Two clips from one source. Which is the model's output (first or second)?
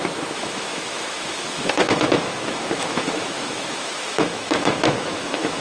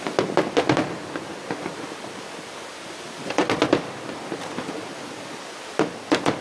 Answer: first